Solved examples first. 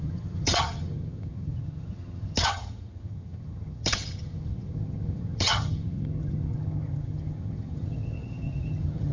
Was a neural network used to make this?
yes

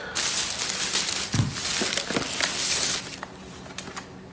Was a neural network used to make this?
no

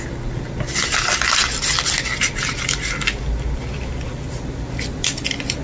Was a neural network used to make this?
no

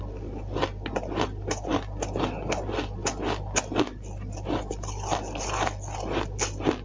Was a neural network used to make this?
no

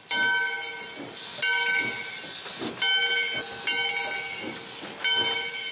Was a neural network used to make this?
no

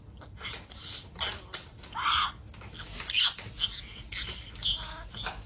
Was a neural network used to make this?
no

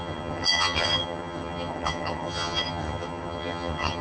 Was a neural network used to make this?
yes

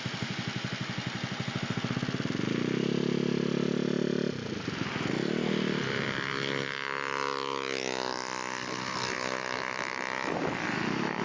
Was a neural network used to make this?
no